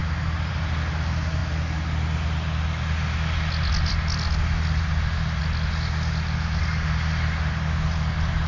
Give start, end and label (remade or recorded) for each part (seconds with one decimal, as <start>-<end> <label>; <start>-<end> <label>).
0.0-8.5 recorded